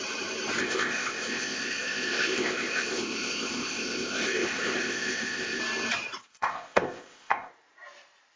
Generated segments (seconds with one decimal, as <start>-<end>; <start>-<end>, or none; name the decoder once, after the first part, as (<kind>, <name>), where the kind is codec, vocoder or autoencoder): 0.6-5.6 (codec, ZipCodec); 6.3-7.5